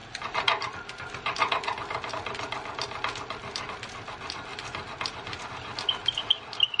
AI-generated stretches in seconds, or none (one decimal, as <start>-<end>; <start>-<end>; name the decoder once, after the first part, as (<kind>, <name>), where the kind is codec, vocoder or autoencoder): none